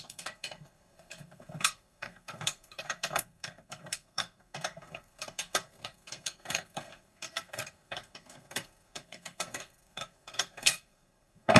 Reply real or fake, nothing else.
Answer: fake